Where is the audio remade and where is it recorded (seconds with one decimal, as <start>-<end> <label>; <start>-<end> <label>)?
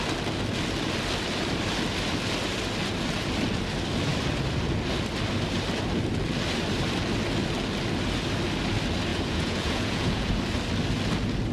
0.0-9.1 recorded; 9.1-10.4 remade; 10.4-11.5 recorded